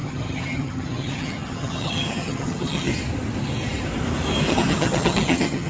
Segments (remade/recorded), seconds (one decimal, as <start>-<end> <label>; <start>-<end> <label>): 0.0-2.9 remade; 2.9-4.5 recorded; 4.5-5.7 remade